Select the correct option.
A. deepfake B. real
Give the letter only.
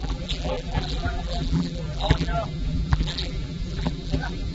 A